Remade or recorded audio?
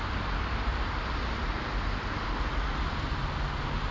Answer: recorded